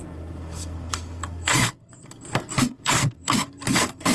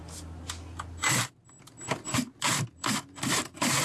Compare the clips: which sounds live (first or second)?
second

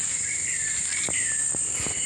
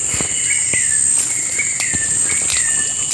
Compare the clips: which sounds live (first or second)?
second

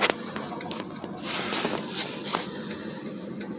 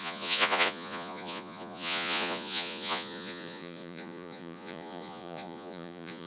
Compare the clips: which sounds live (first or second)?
first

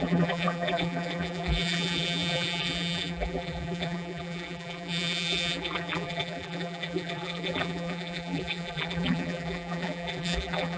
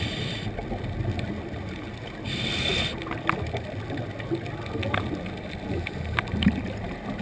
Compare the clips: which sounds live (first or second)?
second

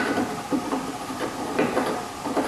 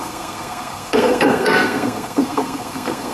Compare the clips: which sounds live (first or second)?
first